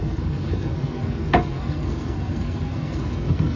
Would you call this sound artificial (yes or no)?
yes